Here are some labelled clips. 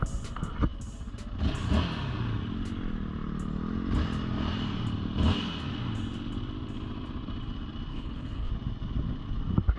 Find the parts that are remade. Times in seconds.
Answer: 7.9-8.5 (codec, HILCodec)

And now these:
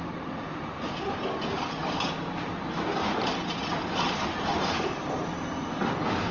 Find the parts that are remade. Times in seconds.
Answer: 1.8-5.4 (vocoder, BigVGAN v2)

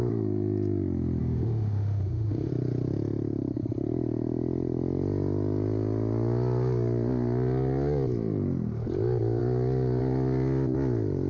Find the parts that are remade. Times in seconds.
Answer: 1.2-2.5 (autoencoder, DAC-VAE)

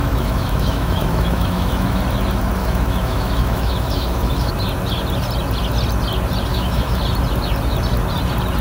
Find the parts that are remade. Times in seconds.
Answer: 0.0-2.0 (autoencoder, DAC-VAE); 2.6-4.5; 6.5-7.0

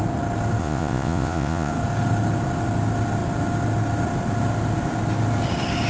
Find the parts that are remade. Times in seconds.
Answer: 0.6-1.7 (vocoder, Vocos)

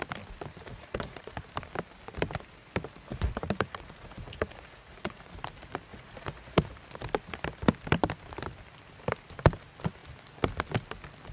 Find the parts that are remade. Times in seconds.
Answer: 0.6-1.4 (vocoder, Vocos); 3.1-5.3; 5.9-6.7